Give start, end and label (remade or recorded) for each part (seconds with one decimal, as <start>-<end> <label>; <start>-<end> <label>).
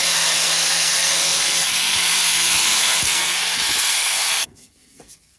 0.0-5.4 remade